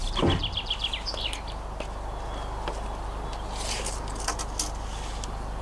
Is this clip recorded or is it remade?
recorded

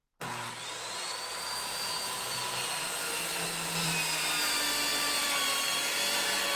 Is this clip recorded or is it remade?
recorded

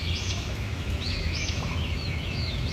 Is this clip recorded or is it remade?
remade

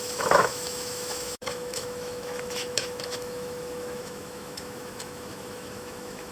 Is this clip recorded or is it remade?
remade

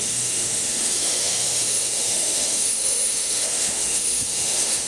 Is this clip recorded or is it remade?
remade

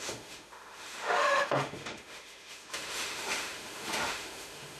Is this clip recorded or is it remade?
remade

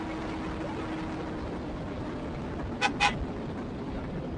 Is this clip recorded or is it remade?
recorded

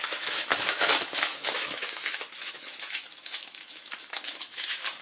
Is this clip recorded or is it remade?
remade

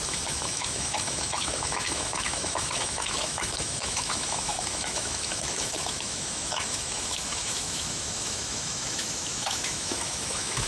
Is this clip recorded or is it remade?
remade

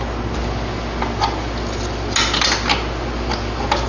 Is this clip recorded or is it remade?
recorded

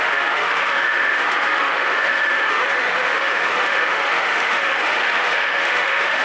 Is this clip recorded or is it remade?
remade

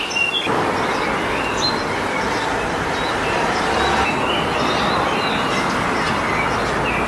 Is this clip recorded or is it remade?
recorded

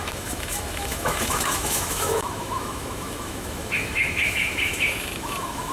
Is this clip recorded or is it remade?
remade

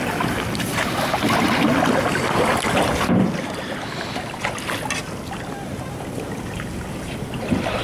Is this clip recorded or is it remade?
recorded